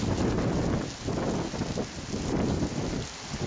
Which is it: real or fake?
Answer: real